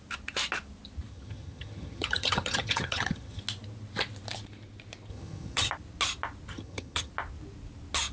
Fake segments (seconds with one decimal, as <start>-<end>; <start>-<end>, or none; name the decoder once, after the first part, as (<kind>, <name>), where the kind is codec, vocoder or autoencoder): 1.1-3.4 (vocoder, HiFi-GAN); 5.1-5.7; 6.5-7.1